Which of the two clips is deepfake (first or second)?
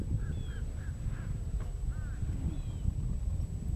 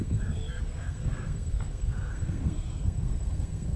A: second